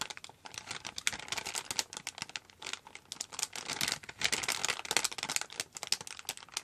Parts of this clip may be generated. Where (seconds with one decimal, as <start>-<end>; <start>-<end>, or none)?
none